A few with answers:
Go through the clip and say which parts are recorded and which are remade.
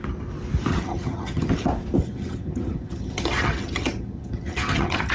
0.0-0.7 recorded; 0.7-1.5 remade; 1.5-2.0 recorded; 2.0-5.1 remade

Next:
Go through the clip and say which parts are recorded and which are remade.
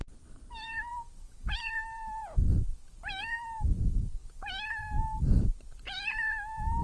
0.0-6.8 remade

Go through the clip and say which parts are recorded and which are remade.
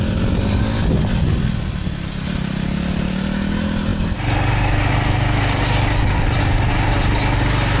0.0-7.8 recorded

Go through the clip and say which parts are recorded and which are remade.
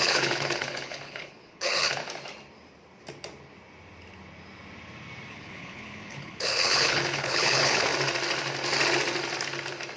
0.0-2.0 remade; 2.0-5.3 recorded; 5.3-7.9 remade; 7.9-10.0 recorded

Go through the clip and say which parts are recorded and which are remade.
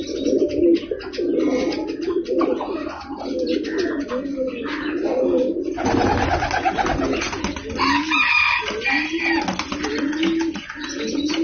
0.0-11.4 recorded